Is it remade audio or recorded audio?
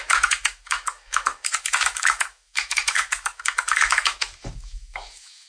remade